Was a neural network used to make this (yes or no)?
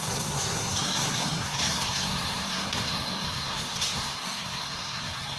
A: yes